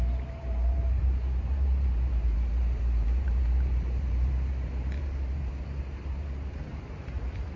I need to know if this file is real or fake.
fake